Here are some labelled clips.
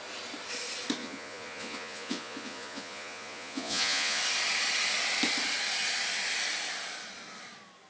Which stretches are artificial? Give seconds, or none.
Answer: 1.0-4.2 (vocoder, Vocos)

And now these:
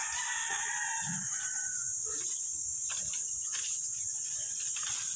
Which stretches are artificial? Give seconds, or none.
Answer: 0.5-5.2 (vocoder, Vocos)

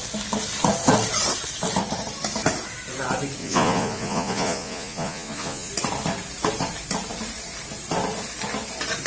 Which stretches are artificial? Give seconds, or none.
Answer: 3.4-5.7 (vocoder, Vocos)

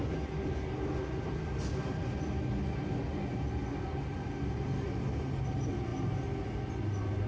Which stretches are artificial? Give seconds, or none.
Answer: none

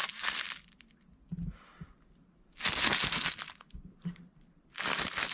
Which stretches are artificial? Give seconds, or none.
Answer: none

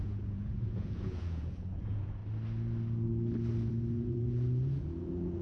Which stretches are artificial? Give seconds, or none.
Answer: 0.0-2.2 (vocoder, Vocos); 3.7-5.4